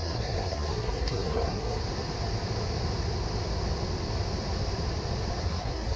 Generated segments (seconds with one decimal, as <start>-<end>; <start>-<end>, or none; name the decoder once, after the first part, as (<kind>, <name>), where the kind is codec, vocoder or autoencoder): 0.0-1.8 (codec, SNAC); 5.4-6.0